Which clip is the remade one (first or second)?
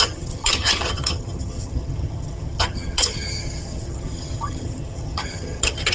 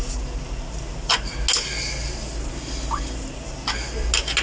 first